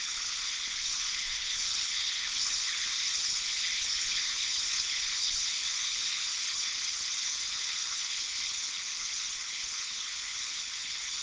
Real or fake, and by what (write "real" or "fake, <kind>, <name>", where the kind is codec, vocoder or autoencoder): fake, codec, HILCodec